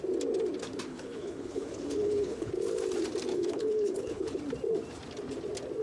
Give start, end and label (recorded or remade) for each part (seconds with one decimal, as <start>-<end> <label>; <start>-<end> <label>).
0.0-0.9 recorded; 0.9-2.5 remade; 2.5-3.3 recorded; 3.3-4.4 remade; 4.4-5.8 recorded